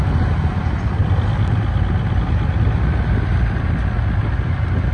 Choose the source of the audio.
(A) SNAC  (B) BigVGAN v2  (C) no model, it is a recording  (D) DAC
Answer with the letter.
C